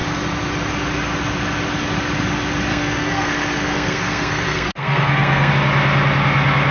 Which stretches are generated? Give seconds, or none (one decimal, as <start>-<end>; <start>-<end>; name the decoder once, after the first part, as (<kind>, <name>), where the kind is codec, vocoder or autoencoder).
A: 2.7-5.5 (codec, SNAC)

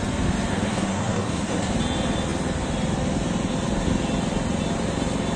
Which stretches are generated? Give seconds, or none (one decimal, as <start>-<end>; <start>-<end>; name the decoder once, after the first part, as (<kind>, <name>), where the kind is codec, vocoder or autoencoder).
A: 0.5-1.7 (codec, SNAC)

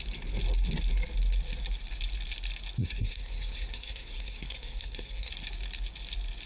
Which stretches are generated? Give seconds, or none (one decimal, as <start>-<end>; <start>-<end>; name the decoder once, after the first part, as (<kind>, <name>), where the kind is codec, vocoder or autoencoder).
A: 2.8-5.3 (codec, SNAC)

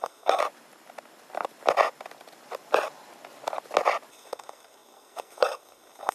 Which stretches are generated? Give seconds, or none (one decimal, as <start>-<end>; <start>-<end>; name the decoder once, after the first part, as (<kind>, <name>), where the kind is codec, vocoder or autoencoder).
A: 0.0-0.4 (codec, SNAC); 4.1-6.1